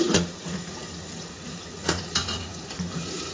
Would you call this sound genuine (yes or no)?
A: no